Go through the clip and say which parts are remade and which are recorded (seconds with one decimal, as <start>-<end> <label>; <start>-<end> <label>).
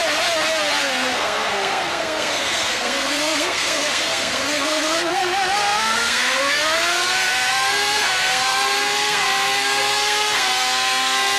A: 0.0-0.8 recorded; 0.8-11.4 remade